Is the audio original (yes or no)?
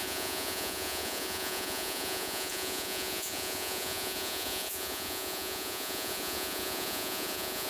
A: no